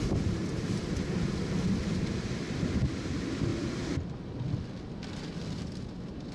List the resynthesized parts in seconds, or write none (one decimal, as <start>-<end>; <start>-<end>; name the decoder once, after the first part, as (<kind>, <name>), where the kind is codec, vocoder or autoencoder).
0.0-0.8 (vocoder, BigVGAN v2); 1.8-3.5; 5.8-6.3